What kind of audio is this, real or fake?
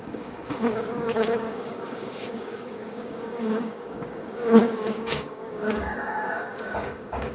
fake